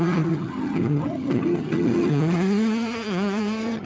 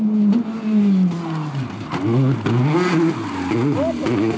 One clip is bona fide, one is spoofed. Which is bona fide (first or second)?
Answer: second